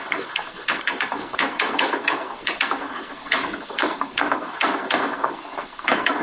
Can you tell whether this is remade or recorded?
remade